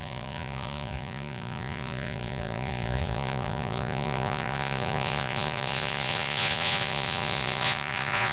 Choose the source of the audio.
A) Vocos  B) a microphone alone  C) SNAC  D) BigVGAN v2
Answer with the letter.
A